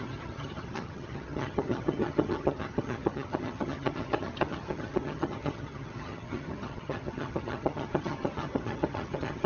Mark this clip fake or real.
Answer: fake